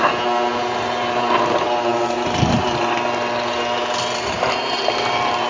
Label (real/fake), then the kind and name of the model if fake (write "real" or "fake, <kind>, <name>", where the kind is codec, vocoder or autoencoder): real